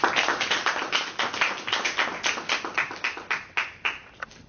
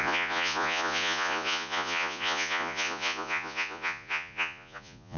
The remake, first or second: second